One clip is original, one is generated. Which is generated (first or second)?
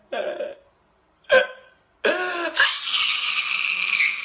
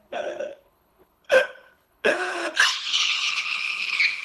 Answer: second